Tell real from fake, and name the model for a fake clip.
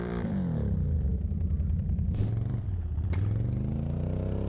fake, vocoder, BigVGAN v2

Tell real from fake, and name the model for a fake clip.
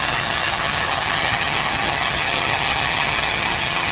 fake, vocoder, HiFi-GAN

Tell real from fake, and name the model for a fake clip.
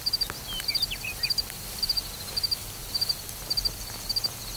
real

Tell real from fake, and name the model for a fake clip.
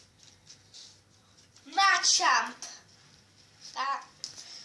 real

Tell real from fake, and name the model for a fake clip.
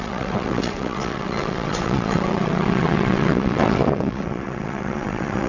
fake, vocoder, WaveNeXt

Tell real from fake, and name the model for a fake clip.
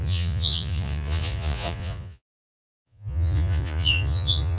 fake, vocoder, Vocos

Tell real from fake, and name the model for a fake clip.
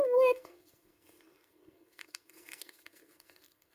fake, codec, SNAC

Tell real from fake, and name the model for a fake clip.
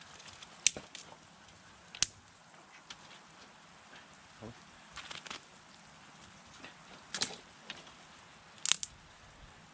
real